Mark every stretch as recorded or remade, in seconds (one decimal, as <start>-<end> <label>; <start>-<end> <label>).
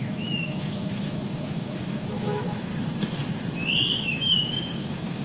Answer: 0.0-2.7 remade; 2.7-3.8 recorded; 3.8-5.2 remade